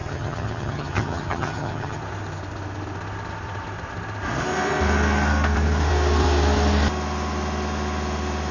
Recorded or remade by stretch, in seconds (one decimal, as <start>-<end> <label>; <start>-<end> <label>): 0.0-2.0 remade; 2.0-8.5 recorded